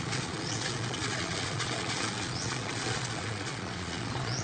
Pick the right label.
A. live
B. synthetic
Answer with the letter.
B